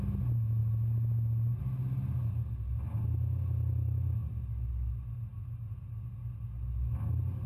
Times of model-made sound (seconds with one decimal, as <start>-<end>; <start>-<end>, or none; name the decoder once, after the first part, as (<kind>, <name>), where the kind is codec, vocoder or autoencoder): none